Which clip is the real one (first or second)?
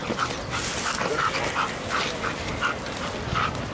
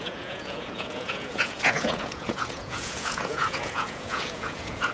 first